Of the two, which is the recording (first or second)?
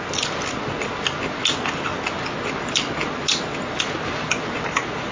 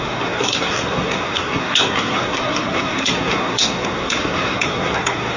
first